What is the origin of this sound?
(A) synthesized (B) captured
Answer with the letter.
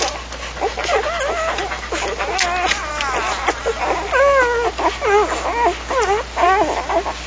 B